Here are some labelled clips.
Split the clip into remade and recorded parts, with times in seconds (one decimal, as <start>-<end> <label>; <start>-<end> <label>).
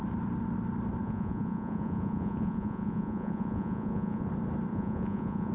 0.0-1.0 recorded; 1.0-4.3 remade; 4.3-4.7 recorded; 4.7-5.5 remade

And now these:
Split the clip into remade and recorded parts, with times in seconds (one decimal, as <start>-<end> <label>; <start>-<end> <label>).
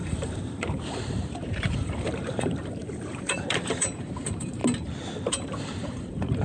0.0-4.6 remade; 4.6-5.3 recorded; 5.3-6.4 remade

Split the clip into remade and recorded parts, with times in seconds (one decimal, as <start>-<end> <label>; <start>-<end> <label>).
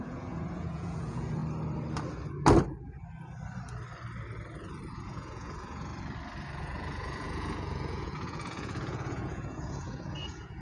0.0-1.4 remade; 1.4-4.9 recorded; 4.9-5.9 remade; 5.9-6.6 recorded; 6.6-10.6 remade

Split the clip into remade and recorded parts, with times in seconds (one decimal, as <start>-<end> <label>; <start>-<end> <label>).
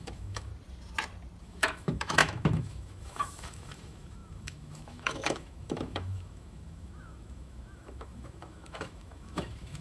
0.0-0.5 remade; 0.5-1.4 recorded; 1.4-9.8 remade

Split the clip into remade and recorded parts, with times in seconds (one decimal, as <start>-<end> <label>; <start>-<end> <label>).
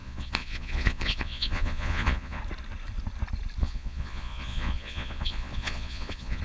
0.0-2.4 remade; 2.4-3.6 recorded; 3.6-6.4 remade